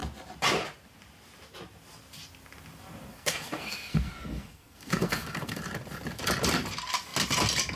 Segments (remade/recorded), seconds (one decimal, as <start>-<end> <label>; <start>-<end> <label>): 0.0-3.1 recorded; 3.1-5.6 remade; 5.6-7.8 recorded